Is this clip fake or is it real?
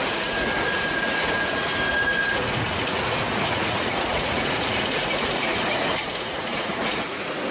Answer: fake